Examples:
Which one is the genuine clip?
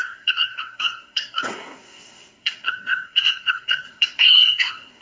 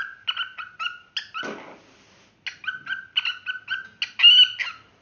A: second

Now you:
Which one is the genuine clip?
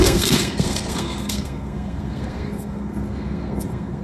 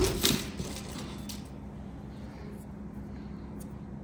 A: second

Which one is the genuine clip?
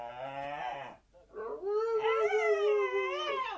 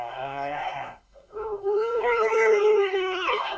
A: first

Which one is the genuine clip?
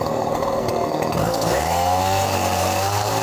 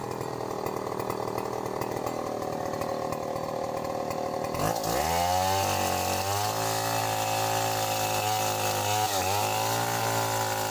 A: second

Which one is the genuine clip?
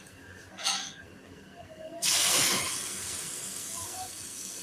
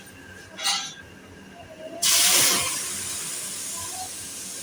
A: second